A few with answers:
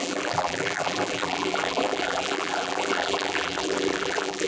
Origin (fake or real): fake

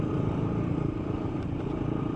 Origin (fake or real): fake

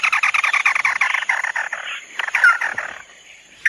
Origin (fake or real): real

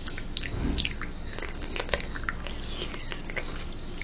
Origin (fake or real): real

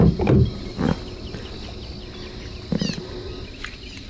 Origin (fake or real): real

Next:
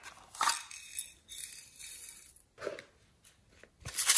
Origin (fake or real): real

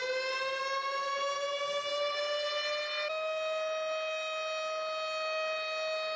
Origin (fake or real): real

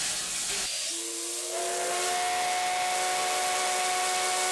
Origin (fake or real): real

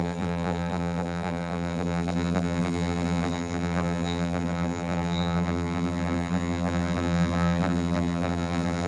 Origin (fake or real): fake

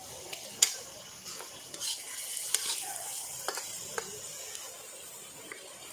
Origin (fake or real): real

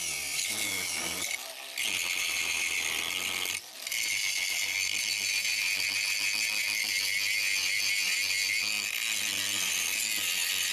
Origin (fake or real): real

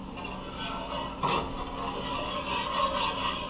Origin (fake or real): real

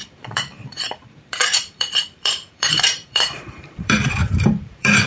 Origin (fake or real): fake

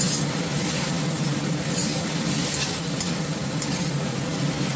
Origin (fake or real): real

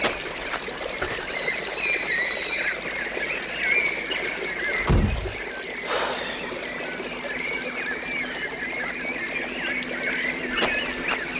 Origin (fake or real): real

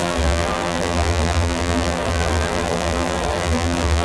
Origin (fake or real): fake